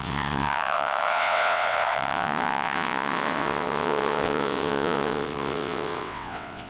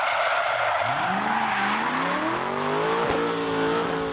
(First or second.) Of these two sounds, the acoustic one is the second